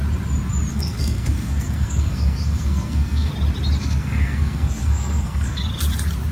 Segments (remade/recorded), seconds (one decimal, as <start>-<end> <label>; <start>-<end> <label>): 0.0-0.7 recorded; 0.7-3.3 remade; 3.3-3.8 recorded; 3.8-5.6 remade; 5.6-6.3 recorded